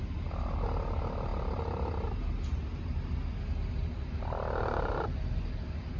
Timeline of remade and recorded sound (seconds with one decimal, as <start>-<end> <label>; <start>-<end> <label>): 0.0-6.0 recorded